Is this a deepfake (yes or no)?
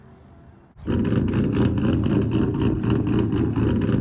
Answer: no